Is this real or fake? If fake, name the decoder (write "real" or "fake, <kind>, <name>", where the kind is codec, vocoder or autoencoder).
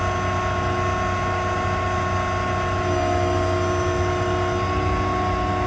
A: real